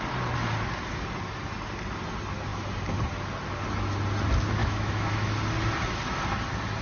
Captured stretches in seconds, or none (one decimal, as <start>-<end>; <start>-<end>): 0.0-4.6; 5.3-6.8